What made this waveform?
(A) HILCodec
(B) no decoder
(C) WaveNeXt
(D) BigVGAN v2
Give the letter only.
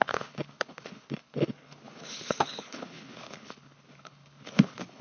A